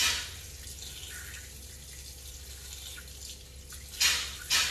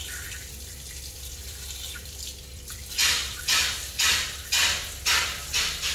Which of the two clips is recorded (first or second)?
first